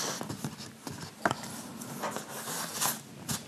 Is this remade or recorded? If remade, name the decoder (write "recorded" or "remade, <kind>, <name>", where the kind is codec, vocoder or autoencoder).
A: recorded